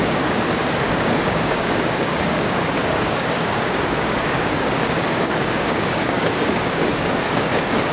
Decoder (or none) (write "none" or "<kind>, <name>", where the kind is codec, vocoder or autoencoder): codec, DAC